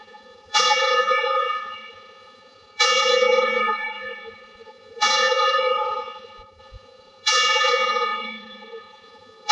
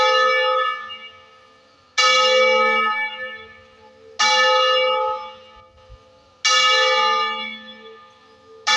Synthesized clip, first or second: first